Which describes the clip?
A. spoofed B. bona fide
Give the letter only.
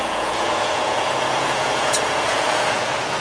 A